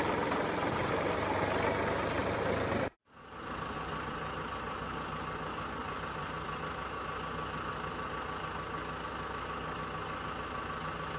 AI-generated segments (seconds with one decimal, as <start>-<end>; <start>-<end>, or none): 2.2-4.1; 5.8-6.6